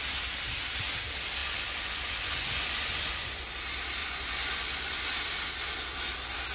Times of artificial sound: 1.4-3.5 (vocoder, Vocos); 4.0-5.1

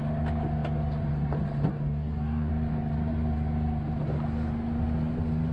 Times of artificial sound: 1.7-2.5 (codec, DAC)

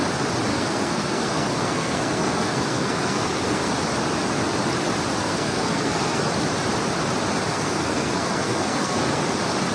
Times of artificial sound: 0.5-3.7 (codec, SNAC); 5.2-6.3; 7.5-9.2

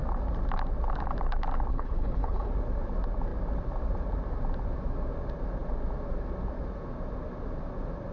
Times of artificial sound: 1.7-2.5 (codec, HILCodec)

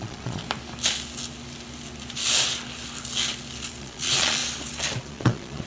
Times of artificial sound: 0.0-0.4 (vocoder, Vocos); 3.8-4.4; 5.0-5.7

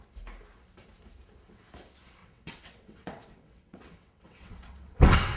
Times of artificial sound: 2.2-5.4 (vocoder, WaveNeXt)

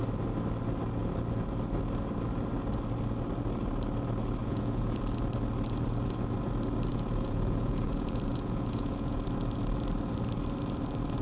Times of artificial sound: 4.4-5.0 (vocoder, Vocos); 6.9-9.2